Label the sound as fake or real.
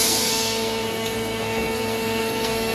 fake